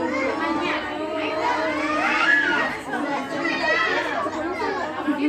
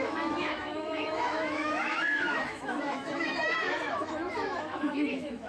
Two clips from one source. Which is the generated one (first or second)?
second